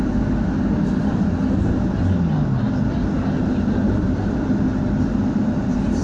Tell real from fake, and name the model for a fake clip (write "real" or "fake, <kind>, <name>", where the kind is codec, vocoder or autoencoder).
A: real